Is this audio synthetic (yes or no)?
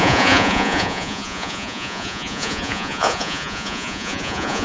yes